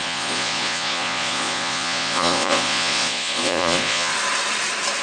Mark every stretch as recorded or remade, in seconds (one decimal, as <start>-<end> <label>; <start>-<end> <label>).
0.0-4.1 remade; 4.1-5.0 recorded